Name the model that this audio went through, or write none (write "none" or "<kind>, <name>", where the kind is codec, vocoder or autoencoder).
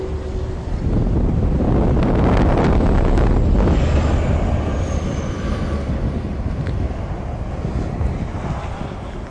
none